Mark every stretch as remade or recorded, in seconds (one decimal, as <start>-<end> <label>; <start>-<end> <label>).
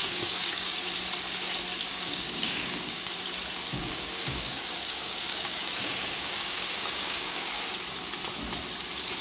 0.0-0.8 remade; 0.8-1.9 recorded; 1.9-3.1 remade; 3.1-3.7 recorded; 3.7-7.6 remade; 7.6-9.2 recorded